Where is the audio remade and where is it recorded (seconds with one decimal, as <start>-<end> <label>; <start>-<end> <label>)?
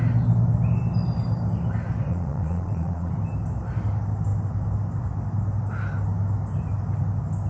0.0-2.1 recorded; 2.1-3.1 remade; 3.1-7.5 recorded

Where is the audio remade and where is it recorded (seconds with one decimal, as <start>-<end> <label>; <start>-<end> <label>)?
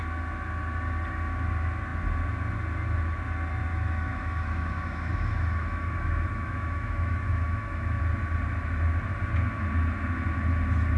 0.0-3.7 recorded; 3.7-8.0 remade; 8.0-11.0 recorded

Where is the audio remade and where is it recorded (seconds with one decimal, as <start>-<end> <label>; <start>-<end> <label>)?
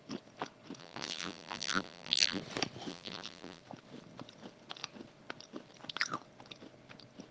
0.0-0.8 recorded; 0.8-2.4 remade; 2.4-2.9 recorded; 2.9-3.6 remade; 3.6-7.3 recorded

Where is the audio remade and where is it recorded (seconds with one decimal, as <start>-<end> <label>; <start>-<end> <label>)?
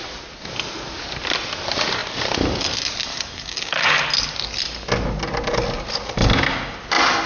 0.0-3.1 recorded; 3.1-4.0 remade; 4.0-7.3 recorded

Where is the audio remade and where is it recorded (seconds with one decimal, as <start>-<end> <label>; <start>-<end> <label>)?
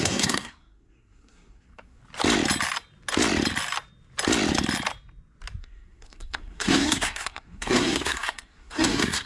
0.0-2.0 remade; 2.0-5.6 recorded; 5.6-9.3 remade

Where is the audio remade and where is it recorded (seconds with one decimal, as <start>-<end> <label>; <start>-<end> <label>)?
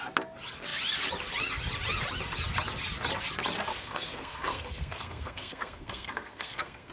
0.0-3.7 recorded; 3.7-6.9 remade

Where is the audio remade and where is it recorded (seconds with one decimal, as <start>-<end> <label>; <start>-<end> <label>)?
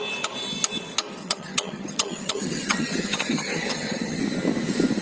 0.0-1.2 recorded; 1.2-4.2 remade; 4.2-5.0 recorded